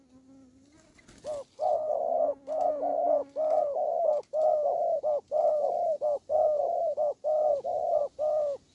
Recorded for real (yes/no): yes